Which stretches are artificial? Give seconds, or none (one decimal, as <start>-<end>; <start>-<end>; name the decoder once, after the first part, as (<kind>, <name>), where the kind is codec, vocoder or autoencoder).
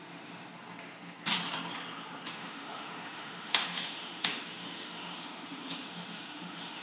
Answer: 0.0-0.5 (autoencoder, DAC-VAE); 2.3-6.8